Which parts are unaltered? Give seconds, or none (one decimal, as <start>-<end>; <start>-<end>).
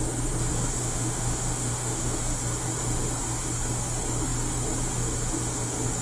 0.0-0.8; 2.2-6.0